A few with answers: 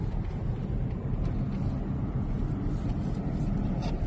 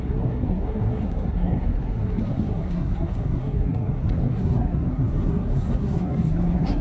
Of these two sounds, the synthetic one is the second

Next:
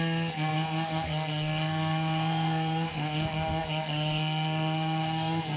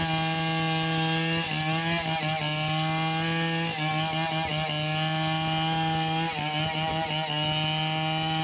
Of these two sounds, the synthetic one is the first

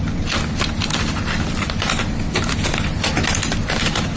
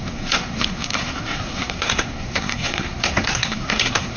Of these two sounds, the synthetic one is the second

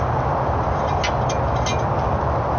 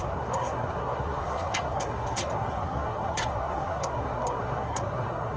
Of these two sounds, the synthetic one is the second